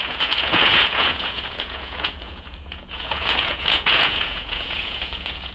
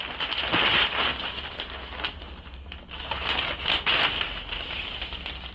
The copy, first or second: first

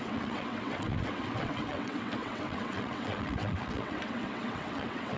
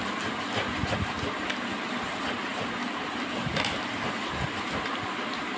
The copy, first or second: first